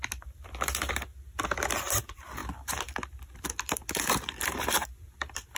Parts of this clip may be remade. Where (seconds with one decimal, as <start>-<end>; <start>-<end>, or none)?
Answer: 0.0-1.1; 1.7-5.6